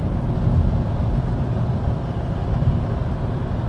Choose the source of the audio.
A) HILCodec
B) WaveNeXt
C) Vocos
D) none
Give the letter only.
D